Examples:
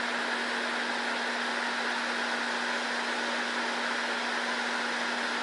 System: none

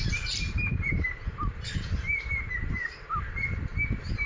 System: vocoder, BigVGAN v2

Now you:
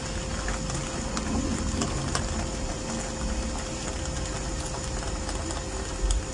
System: none